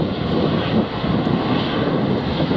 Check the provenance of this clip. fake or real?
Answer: real